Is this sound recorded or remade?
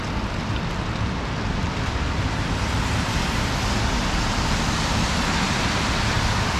recorded